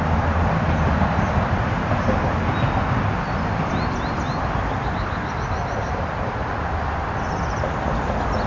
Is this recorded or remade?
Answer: remade